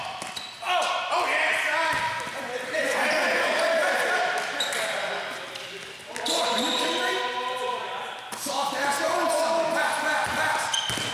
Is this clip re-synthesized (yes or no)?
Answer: no